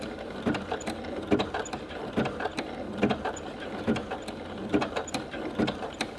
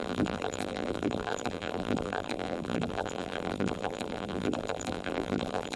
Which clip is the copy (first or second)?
second